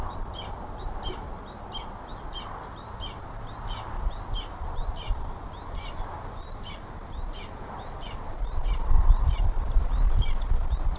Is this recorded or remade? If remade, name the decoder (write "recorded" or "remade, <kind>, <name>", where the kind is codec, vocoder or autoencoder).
recorded